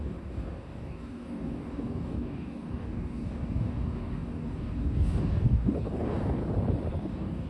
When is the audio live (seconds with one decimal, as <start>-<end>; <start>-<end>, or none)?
6.4-6.9

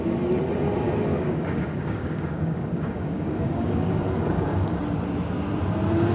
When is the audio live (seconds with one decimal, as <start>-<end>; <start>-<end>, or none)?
0.0-1.1; 4.8-6.1

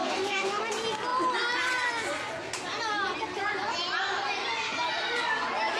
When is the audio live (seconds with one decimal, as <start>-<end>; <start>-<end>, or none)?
0.6-5.8

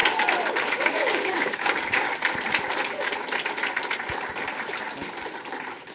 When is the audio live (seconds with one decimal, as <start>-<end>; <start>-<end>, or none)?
0.0-0.7; 2.1-5.9

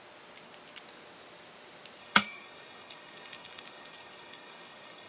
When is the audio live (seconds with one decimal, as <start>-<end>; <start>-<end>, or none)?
0.0-2.0

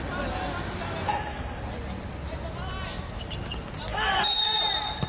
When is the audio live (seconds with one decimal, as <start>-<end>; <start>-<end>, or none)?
0.0-1.1; 1.6-3.9; 4.6-5.1

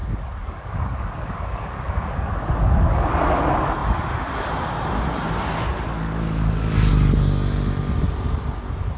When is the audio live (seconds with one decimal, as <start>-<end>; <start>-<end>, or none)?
3.2-5.9; 6.9-9.0